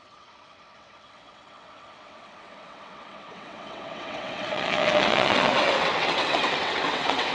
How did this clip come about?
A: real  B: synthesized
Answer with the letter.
B